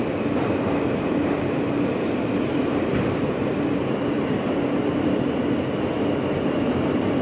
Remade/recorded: recorded